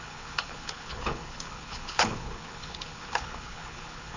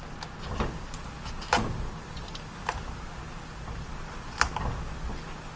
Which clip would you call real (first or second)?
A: second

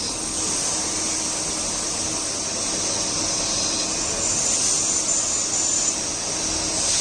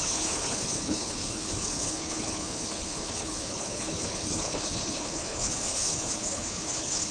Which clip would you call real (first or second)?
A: first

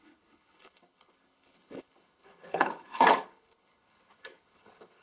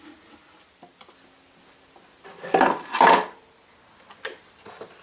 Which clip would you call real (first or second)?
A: second